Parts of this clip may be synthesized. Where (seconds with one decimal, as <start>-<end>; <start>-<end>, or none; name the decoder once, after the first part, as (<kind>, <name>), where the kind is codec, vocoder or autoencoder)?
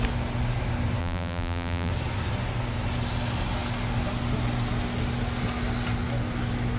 1.0-1.9 (vocoder, BigVGAN v2)